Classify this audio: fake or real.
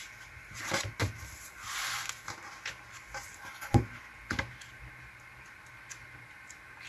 real